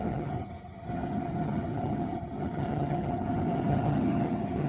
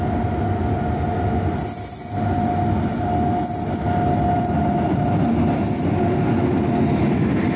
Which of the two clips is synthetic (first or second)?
first